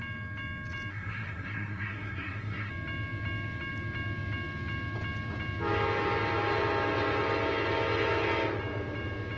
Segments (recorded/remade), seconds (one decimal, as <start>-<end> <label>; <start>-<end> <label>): 0.0-0.9 recorded; 0.9-2.7 remade; 2.7-9.4 recorded